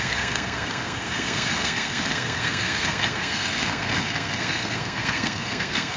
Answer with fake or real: fake